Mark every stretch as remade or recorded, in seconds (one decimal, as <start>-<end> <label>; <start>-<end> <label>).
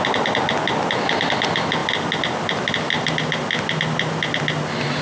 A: 0.0-5.0 recorded